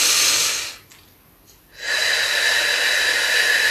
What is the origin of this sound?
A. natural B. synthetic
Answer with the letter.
A